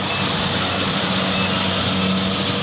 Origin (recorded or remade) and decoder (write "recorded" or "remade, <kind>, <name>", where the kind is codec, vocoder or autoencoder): recorded